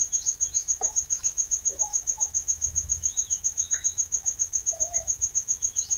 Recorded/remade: remade